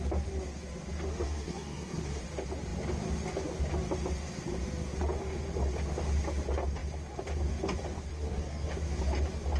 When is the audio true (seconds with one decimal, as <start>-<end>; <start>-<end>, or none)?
0.0-1.1; 2.2-8.1; 8.7-9.6

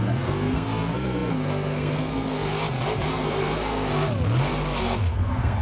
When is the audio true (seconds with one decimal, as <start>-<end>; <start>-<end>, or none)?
2.5-3.1; 3.9-4.8

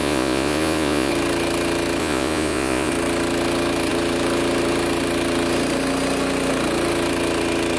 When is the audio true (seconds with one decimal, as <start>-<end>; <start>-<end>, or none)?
1.1-2.0; 2.9-7.8

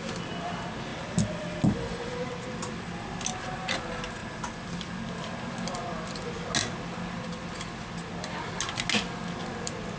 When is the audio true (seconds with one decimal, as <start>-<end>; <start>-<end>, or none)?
0.0-0.9; 3.4-4.2; 6.4-10.0

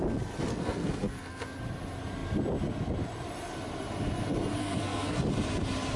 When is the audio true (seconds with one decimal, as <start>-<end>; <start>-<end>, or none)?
0.0-0.5; 1.6-4.6; 5.2-6.0

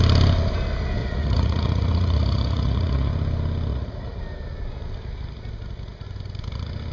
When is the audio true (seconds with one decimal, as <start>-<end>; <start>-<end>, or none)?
0.0-1.0; 3.1-3.7; 4.2-6.9